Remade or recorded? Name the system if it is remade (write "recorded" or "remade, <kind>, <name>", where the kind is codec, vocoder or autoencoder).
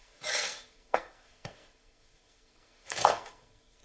remade, codec, SNAC